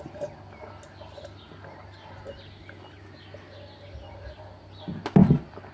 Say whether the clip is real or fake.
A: real